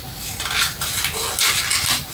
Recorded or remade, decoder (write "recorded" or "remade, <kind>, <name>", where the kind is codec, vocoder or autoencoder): recorded